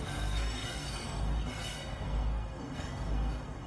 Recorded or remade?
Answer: remade